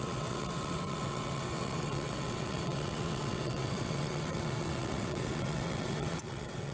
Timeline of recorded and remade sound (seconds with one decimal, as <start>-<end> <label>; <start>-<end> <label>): 0.0-6.7 remade